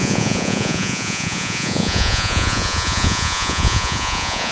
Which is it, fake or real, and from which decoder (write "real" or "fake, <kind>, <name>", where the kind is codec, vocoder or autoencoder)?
fake, vocoder, Vocos